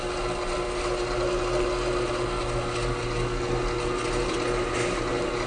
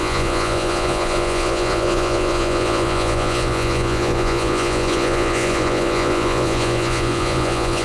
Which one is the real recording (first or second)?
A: first